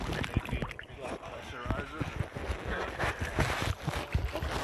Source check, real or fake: real